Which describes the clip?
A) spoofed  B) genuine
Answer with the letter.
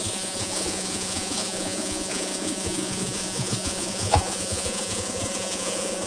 A